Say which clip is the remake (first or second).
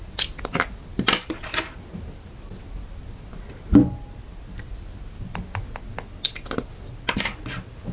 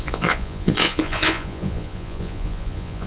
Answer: second